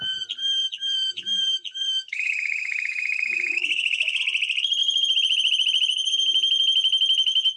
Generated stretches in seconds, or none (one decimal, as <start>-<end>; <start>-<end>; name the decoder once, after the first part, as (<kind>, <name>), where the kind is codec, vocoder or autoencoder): 0.4-4.2 (autoencoder, DAC-VAE)